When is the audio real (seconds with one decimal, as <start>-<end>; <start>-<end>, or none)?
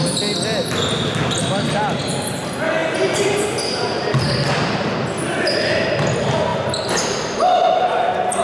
0.0-8.4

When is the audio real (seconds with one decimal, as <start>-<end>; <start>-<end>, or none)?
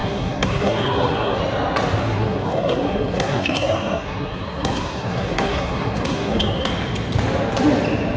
1.4-2.0; 6.7-8.2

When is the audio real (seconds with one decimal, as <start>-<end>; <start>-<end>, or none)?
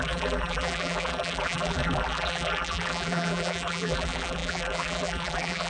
none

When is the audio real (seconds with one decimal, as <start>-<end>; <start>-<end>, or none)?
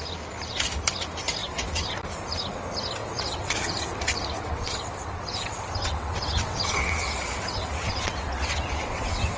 0.0-1.4; 2.0-3.0; 3.6-4.1